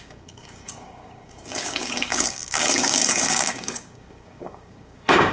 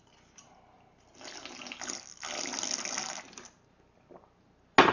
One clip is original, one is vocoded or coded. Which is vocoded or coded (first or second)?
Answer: first